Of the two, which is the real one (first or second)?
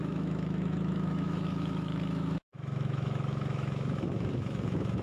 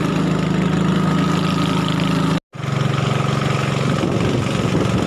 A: second